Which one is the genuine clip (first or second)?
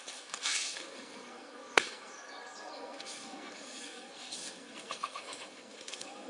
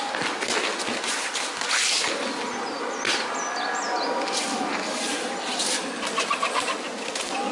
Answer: second